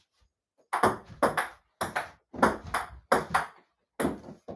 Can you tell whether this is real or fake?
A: real